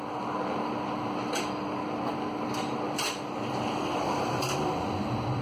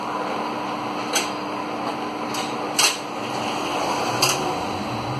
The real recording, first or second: second